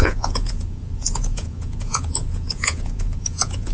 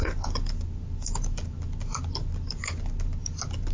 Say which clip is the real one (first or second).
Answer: second